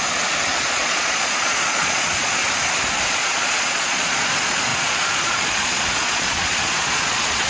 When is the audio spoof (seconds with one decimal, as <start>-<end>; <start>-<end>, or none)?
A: 0.6-2.4; 3.1-7.5